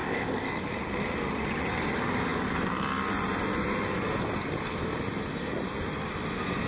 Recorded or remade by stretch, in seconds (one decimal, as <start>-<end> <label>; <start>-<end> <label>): 0.0-0.5 remade; 0.5-6.7 recorded